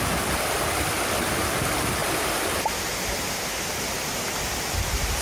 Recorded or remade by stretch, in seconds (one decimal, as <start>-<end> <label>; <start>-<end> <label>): 0.0-2.0 recorded; 2.0-3.0 remade; 3.0-5.2 recorded